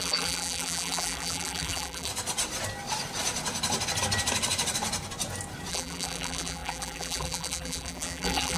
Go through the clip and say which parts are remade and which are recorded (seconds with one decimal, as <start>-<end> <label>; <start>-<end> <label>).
0.0-2.1 remade; 2.1-5.7 recorded; 5.7-8.6 remade